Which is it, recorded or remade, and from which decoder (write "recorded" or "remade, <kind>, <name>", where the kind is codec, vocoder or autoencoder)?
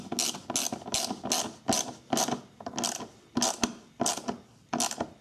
recorded